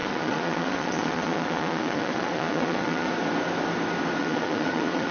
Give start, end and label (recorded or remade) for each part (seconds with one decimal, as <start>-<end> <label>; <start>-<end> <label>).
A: 0.0-3.1 remade; 3.1-4.2 recorded; 4.2-5.1 remade

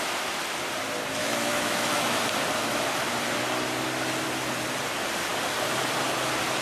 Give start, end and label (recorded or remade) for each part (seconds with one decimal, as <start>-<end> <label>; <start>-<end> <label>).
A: 0.0-1.2 recorded; 1.2-2.2 remade; 2.2-6.6 recorded

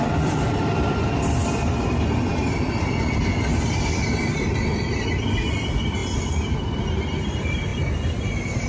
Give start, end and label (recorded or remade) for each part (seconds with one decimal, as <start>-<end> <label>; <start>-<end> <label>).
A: 0.0-1.4 remade; 1.4-4.3 recorded; 4.3-6.0 remade; 6.0-7.2 recorded; 7.2-7.7 remade; 7.7-8.7 recorded

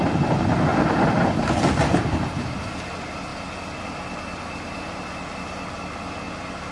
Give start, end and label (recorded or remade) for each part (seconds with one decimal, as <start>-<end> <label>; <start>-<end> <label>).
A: 0.0-6.7 recorded

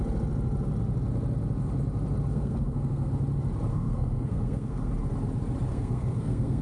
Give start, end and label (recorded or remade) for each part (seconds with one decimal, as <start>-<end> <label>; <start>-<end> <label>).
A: 0.0-2.3 recorded; 2.3-3.1 remade; 3.1-3.7 recorded; 3.7-4.9 remade; 4.9-5.7 recorded; 5.7-6.6 remade

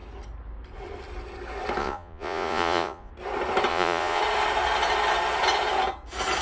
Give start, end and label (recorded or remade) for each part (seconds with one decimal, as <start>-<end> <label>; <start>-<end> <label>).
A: 0.0-1.8 recorded; 1.8-3.1 remade; 3.1-3.7 recorded; 3.7-4.2 remade; 4.2-6.4 recorded